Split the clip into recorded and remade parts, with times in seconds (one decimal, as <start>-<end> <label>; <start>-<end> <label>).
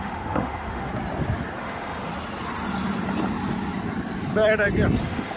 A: 0.0-0.9 remade; 0.9-1.6 recorded; 1.6-2.1 remade; 2.1-5.0 recorded; 5.0-5.4 remade